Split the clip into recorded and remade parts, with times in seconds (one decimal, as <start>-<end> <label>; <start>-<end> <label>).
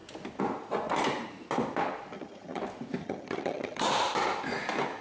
0.0-2.1 recorded; 2.1-2.6 remade; 2.6-3.0 recorded; 3.0-3.9 remade; 3.9-5.0 recorded